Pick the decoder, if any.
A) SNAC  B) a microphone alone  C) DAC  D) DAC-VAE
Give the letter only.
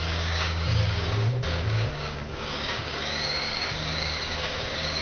C